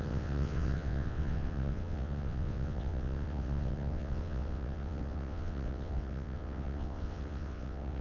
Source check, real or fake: fake